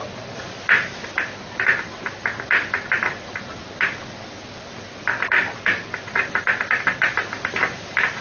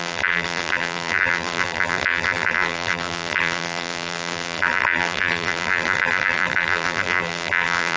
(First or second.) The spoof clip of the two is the second